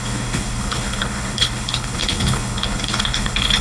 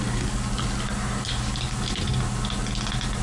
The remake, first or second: first